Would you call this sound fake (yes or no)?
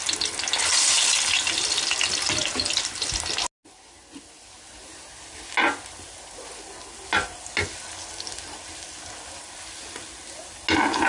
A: no